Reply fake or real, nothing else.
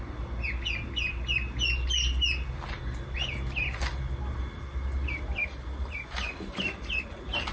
real